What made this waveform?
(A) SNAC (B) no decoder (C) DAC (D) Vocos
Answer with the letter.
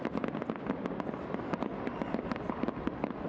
B